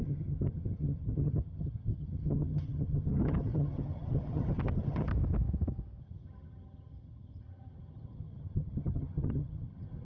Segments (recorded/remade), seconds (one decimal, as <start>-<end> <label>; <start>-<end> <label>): 0.0-5.1 remade; 5.1-6.0 recorded; 6.0-10.0 remade